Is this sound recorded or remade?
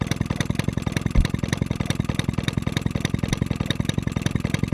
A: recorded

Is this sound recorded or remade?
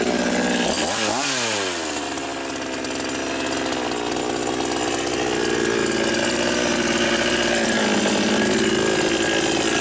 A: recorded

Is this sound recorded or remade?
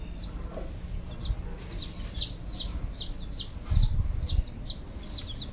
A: recorded